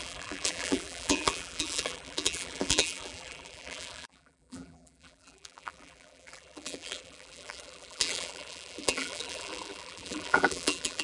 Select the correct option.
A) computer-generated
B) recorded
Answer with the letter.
A